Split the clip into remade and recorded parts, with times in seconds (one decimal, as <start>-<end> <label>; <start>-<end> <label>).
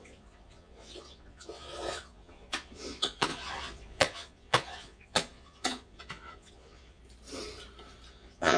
0.0-7.0 remade; 7.0-8.1 recorded; 8.1-8.6 remade